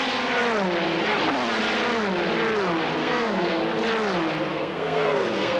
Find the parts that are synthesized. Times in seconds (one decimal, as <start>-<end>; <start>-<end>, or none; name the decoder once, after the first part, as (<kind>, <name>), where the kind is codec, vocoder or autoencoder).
3.0-3.6 (codec, SNAC); 4.5-5.6